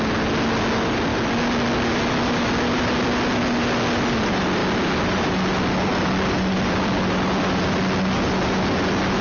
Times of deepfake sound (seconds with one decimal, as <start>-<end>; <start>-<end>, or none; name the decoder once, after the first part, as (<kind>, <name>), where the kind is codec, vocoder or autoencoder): none